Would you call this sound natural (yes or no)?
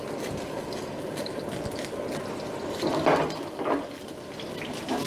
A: yes